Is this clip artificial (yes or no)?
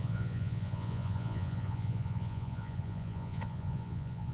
yes